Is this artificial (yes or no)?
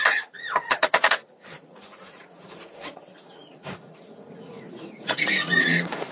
yes